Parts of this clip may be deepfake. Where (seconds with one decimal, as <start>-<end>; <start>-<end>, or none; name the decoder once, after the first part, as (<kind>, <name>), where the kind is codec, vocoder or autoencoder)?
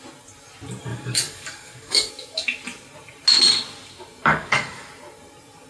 0.9-2.1 (codec, DAC); 4.3-4.9